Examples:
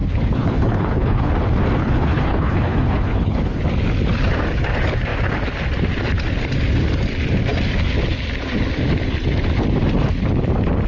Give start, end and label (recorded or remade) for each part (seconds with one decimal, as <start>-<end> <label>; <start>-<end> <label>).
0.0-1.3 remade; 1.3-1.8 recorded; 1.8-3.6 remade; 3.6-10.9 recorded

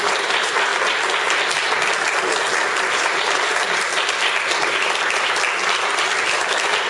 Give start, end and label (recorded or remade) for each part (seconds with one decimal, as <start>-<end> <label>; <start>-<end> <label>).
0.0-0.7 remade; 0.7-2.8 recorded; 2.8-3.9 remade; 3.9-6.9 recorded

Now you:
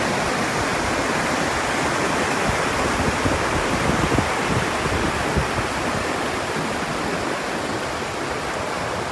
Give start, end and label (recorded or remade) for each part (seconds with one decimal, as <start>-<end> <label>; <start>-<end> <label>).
0.0-9.1 recorded

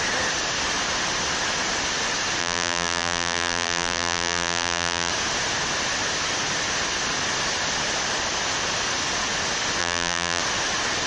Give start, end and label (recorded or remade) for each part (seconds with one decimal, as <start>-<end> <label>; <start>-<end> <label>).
0.0-2.4 recorded; 2.4-5.1 remade; 5.1-9.8 recorded; 9.8-10.4 remade; 10.4-11.1 recorded

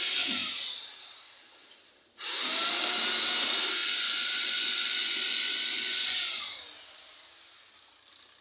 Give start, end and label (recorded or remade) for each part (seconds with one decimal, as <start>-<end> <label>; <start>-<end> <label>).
0.0-3.8 recorded; 3.8-6.4 remade; 6.4-8.4 recorded

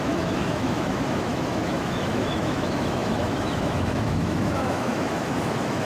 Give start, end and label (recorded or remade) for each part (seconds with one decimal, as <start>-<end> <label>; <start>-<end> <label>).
0.0-5.8 remade